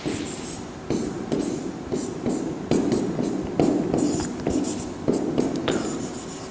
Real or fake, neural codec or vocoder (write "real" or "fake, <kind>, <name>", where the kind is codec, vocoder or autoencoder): real